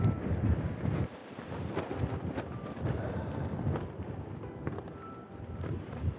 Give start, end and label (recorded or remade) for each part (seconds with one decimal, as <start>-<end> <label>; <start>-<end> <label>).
0.0-6.2 recorded